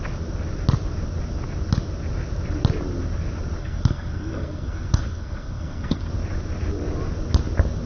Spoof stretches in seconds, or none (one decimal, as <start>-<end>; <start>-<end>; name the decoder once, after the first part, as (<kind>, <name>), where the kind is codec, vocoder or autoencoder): 3.6-6.1 (codec, SNAC)

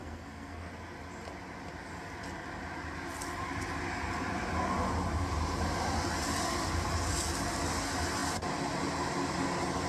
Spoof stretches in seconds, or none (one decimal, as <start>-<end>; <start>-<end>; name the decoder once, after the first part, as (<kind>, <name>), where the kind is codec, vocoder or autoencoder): 0.0-0.7 (codec, SNAC)

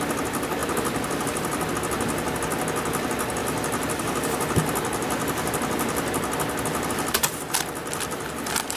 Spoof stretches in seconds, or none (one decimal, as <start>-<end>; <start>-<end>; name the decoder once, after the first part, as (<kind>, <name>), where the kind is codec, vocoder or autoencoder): 0.6-1.7 (vocoder, BigVGAN v2); 7.8-8.8

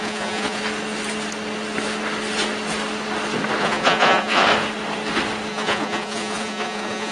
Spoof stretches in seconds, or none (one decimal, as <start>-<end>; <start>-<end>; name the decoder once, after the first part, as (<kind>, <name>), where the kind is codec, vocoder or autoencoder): 0.0-0.6 (vocoder, Vocos); 3.6-4.4; 5.5-7.1

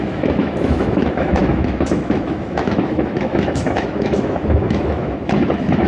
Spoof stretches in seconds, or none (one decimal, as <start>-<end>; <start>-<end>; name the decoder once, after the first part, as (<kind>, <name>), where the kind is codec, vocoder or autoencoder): 0.0-5.9 (autoencoder, DAC-VAE)

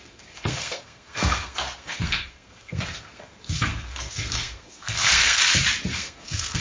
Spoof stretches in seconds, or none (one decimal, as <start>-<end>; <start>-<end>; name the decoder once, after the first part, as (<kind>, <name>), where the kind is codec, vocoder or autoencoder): 0.0-5.4 (codec, SNAC); 5.9-6.6

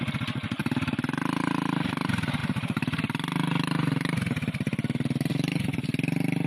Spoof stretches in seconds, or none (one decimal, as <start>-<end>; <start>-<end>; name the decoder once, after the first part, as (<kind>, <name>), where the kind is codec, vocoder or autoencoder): 2.4-5.3 (vocoder, BigVGAN v2)